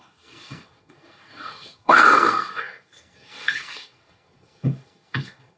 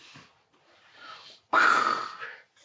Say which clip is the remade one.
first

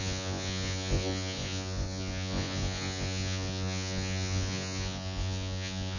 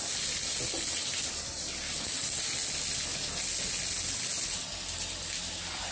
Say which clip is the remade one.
first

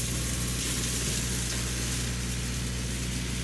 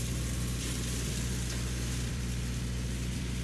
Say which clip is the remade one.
second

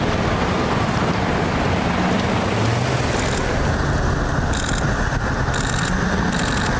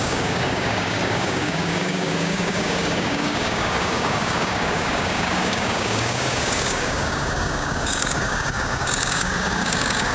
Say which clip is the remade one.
second